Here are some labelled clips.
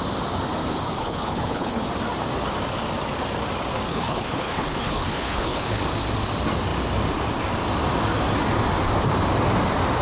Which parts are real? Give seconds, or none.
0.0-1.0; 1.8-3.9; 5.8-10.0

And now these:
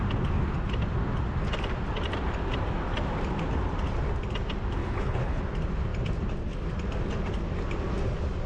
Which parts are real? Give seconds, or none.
0.0-4.8; 5.4-8.5